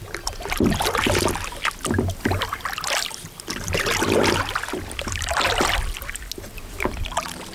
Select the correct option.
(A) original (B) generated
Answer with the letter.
A